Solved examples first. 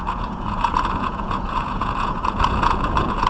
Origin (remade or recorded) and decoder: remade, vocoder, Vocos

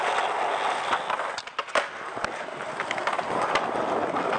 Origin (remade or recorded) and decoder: recorded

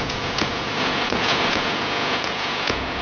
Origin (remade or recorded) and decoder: remade, vocoder, Vocos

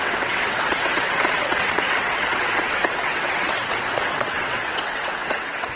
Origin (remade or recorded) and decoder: remade, vocoder, WaveNeXt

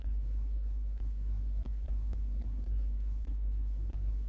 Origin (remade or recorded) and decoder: remade, codec, SNAC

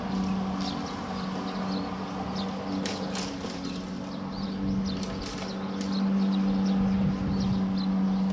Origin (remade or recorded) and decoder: recorded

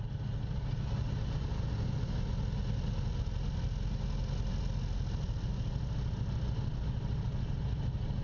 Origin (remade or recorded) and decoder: recorded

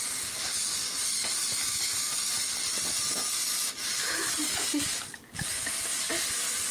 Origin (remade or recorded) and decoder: recorded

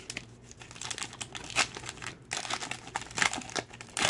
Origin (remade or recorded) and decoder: recorded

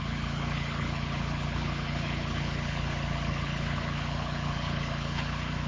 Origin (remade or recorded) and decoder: remade, codec, HILCodec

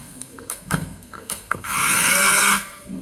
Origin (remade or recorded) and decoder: remade, codec, SNAC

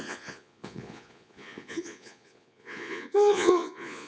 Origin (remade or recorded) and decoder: remade, vocoder, Vocos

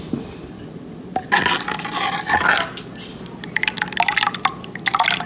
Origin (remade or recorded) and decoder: recorded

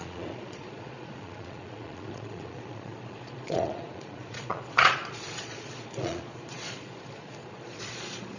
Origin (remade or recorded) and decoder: remade, vocoder, Vocos